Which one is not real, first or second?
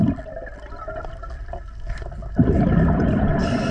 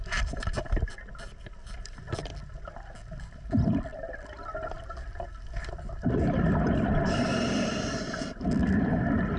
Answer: second